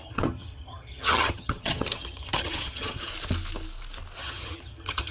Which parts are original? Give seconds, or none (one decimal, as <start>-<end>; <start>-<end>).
3.1-4.2